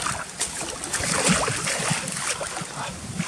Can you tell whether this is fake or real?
real